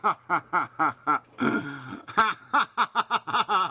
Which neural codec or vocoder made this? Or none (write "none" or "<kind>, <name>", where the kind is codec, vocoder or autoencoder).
none